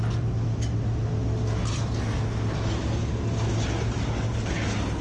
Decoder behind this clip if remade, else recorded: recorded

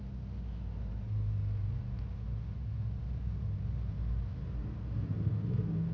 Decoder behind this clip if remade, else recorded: recorded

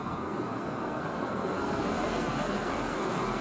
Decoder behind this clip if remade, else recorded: remade, codec, SNAC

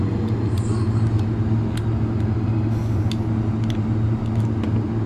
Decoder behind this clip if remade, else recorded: recorded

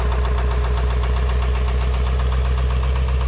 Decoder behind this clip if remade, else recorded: recorded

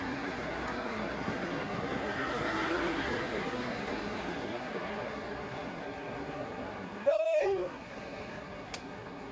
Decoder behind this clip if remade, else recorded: remade, codec, SNAC